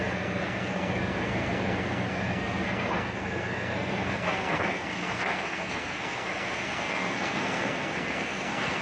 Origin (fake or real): fake